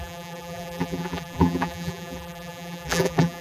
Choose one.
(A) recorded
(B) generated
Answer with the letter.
B